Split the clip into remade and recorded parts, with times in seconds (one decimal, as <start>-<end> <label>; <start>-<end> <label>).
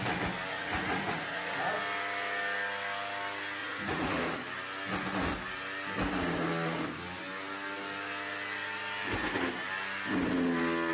0.0-0.5 recorded; 0.5-1.7 remade; 1.7-3.6 recorded; 3.6-4.2 remade; 4.2-10.9 recorded